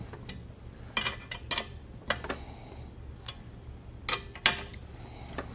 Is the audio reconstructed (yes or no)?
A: no